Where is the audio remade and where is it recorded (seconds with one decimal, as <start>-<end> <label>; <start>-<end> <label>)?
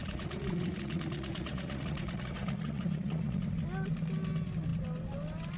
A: 0.0-3.4 remade; 3.4-5.6 recorded